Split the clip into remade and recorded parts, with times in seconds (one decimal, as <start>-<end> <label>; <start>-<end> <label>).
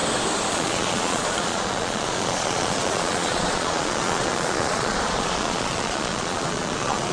0.0-0.5 recorded; 0.5-7.1 remade